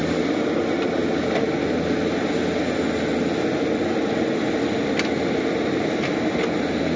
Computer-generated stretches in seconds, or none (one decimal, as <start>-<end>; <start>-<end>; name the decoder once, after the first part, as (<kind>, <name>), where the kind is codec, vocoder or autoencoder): none